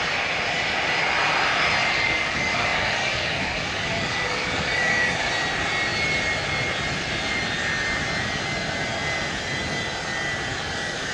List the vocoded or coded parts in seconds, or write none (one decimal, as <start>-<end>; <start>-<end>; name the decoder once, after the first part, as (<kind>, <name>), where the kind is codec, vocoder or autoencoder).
1.8-5.3 (codec, DAC); 10.5-11.1